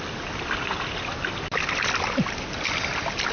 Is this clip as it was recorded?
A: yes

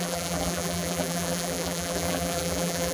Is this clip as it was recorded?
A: no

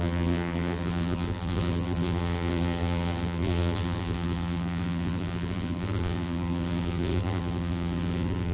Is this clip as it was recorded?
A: no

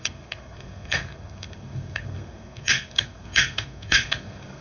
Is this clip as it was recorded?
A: no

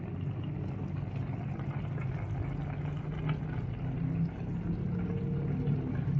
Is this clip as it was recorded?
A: yes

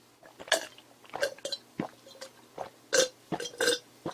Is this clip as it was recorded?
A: yes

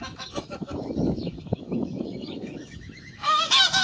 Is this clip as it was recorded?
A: no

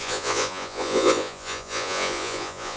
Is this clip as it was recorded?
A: no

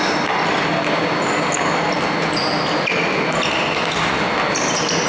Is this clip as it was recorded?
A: yes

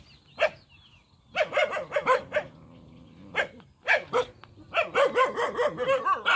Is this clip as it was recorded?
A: yes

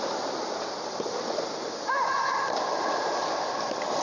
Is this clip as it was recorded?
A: no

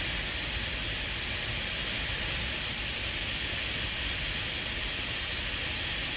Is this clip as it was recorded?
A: yes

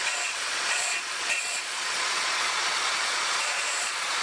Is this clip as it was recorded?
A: no